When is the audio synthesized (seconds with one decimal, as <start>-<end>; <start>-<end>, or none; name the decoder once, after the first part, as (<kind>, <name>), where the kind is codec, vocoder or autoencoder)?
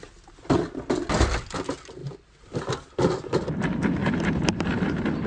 2.0-2.9 (vocoder, BigVGAN v2); 4.0-5.3